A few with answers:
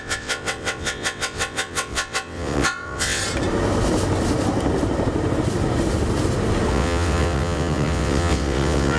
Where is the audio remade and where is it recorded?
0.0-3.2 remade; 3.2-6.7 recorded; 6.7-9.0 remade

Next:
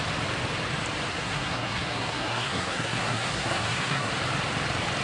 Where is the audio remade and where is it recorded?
0.0-1.1 recorded; 1.1-4.1 remade; 4.1-5.0 recorded

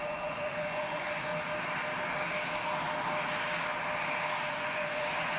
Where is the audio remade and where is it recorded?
0.0-1.3 remade; 1.3-4.5 recorded; 4.5-5.4 remade

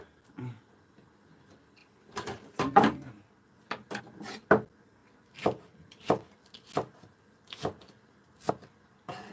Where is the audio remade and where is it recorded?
0.0-9.3 recorded

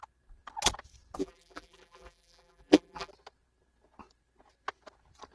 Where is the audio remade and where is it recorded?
0.0-1.2 recorded; 1.2-3.1 remade; 3.1-5.3 recorded

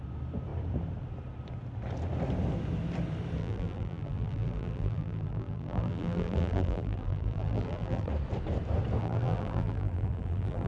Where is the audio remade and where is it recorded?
0.0-3.4 recorded; 3.4-8.1 remade; 8.1-9.0 recorded; 9.0-10.7 remade